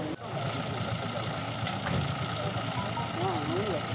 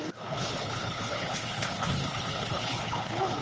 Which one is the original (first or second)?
first